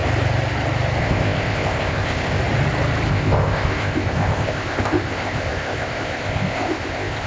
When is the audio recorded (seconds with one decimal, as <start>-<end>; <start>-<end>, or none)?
0.0-1.0; 2.4-3.1